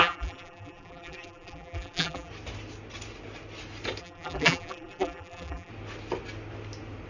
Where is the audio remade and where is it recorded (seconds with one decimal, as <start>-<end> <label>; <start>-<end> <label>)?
0.0-2.3 remade; 2.3-4.0 recorded; 4.0-5.7 remade; 5.7-7.1 recorded